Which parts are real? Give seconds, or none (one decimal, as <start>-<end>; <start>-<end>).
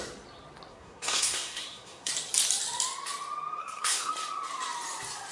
0.0-0.7; 2.1-3.6; 4.1-5.3